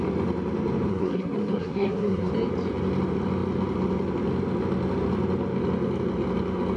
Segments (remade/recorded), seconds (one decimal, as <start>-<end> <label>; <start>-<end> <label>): 0.0-0.9 recorded; 0.9-2.3 remade; 2.3-6.8 recorded